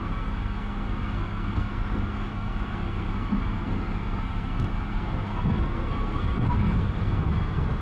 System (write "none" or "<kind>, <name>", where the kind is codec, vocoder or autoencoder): codec, SNAC